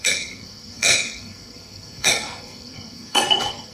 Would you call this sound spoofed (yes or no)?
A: yes